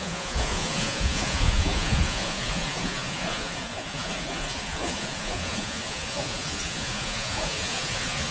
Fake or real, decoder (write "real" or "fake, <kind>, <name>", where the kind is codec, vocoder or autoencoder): fake, vocoder, Vocos